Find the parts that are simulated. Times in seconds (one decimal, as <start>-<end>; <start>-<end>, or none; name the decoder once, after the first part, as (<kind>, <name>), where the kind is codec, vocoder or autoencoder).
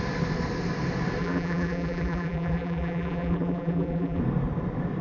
1.2-4.2 (vocoder, BigVGAN v2)